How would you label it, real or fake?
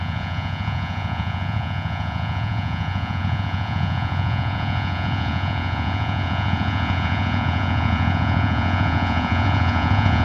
fake